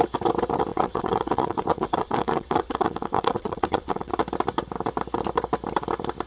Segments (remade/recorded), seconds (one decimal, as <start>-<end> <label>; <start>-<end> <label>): 0.0-0.7 recorded; 0.7-4.1 remade; 4.1-6.3 recorded

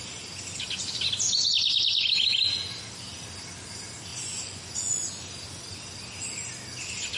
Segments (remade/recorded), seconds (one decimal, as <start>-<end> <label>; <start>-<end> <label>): 0.0-4.1 recorded; 4.1-5.1 remade; 5.1-7.2 recorded

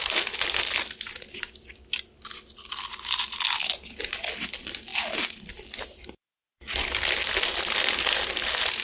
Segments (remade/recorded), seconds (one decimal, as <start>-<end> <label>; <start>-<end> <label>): 0.0-8.8 recorded

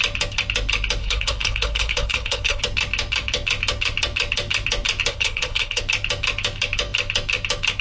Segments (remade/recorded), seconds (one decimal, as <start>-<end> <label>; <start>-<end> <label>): 0.0-1.0 recorded; 1.0-2.6 remade; 2.6-5.1 recorded; 5.1-5.8 remade; 5.8-7.8 recorded

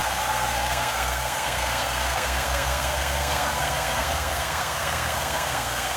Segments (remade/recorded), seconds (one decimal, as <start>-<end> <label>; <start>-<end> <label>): 0.0-6.0 remade

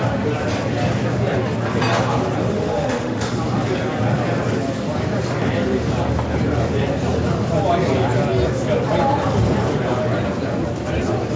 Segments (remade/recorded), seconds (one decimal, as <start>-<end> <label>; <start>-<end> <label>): 0.0-2.5 recorded; 2.5-3.3 remade; 3.3-11.4 recorded

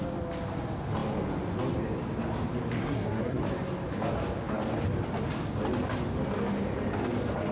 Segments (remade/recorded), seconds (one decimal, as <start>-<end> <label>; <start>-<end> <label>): 0.0-2.8 recorded; 2.8-3.4 remade; 3.4-7.5 recorded

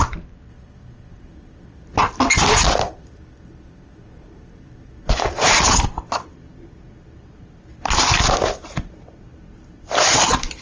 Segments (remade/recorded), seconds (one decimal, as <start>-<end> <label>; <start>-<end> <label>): 0.0-6.5 remade; 6.5-9.6 recorded; 9.6-10.6 remade